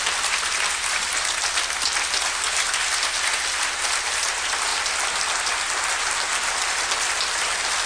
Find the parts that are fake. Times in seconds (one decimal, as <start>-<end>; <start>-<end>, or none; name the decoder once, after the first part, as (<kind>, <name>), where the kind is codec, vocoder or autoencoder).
none